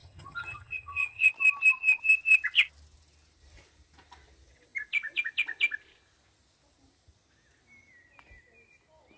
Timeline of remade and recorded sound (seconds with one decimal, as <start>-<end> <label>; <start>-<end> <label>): 0.0-1.3 remade; 1.3-9.2 recorded